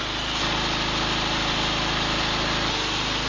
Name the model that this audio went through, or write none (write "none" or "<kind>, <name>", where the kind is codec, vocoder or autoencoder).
none